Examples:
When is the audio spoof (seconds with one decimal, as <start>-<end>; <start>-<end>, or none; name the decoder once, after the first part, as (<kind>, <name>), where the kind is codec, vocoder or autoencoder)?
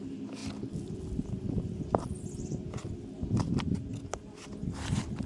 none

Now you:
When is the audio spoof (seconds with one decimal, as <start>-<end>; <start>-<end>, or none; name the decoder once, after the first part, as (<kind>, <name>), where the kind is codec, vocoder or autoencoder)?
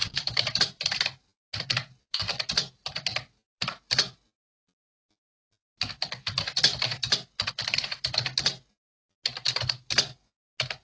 0.0-0.6 (codec, DAC)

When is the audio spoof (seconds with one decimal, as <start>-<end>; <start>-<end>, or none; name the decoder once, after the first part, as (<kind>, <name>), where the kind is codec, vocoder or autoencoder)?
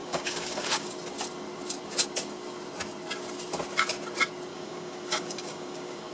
0.0-0.9 (codec, DAC); 4.5-6.1